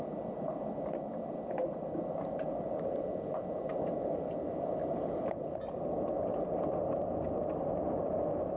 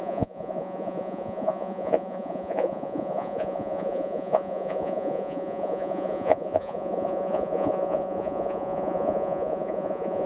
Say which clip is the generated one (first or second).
second